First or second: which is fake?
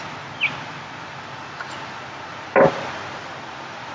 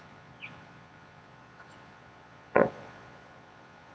second